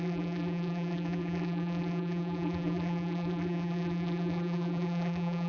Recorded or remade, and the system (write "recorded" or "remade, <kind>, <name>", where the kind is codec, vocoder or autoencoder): remade, vocoder, BigVGAN v2